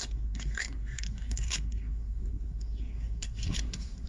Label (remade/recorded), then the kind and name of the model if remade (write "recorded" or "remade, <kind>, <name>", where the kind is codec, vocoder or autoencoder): remade, codec, SNAC